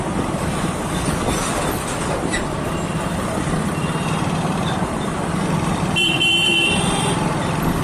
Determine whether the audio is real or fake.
fake